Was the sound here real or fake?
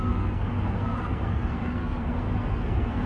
fake